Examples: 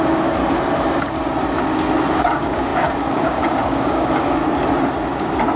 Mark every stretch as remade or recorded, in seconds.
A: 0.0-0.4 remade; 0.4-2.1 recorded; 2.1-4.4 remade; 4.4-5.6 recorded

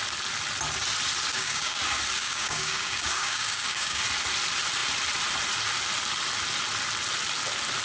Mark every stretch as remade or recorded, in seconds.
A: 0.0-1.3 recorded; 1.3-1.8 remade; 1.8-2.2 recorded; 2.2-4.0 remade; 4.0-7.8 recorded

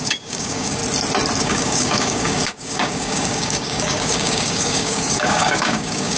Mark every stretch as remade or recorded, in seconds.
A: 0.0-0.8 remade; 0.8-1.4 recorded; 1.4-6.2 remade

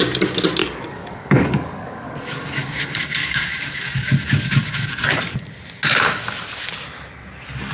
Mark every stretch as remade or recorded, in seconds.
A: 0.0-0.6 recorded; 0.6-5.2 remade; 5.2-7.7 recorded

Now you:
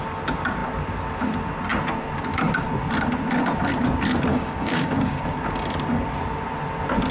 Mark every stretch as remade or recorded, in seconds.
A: 0.0-4.3 recorded; 4.3-5.2 remade; 5.2-7.1 recorded

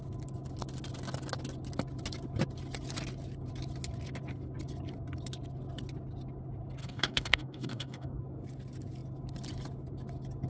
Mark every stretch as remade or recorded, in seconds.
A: 0.0-6.8 recorded; 6.8-8.2 remade; 8.2-10.5 recorded